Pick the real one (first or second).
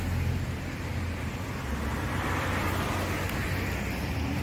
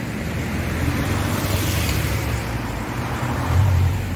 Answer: first